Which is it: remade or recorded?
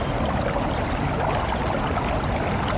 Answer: recorded